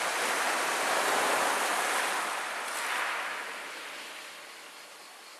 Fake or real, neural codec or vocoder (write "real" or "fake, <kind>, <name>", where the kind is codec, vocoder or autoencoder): real